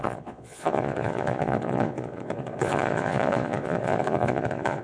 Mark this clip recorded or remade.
remade